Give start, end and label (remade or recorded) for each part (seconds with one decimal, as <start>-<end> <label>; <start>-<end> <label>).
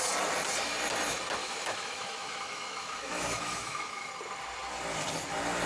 0.0-1.4 recorded; 1.4-4.1 remade; 4.1-5.7 recorded